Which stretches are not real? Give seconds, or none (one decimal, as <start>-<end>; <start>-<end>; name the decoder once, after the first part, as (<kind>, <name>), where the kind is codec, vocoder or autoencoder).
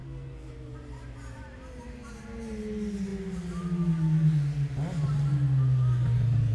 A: 0.0-0.5 (codec, SNAC)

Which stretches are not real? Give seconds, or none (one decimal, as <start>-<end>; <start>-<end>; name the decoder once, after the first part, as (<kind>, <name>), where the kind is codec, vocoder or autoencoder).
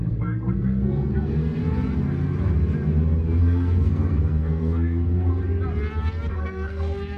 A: 0.0-1.6 (codec, SNAC); 3.4-5.4; 6.3-7.2